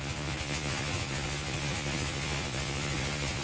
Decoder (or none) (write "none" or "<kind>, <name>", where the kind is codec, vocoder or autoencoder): vocoder, Vocos